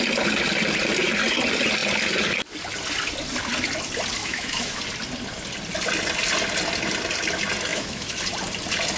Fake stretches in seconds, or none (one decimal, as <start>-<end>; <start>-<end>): 4.2-4.8; 7.7-8.2